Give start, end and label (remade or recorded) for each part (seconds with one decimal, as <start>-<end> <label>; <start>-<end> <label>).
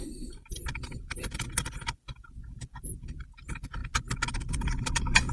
0.0-3.8 remade; 3.8-4.5 recorded; 4.5-5.3 remade